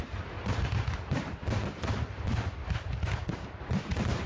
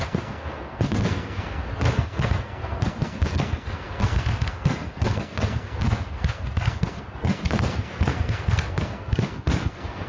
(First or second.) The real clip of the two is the first